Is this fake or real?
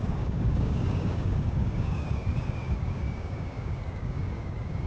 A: fake